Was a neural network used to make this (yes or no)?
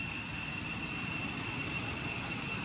yes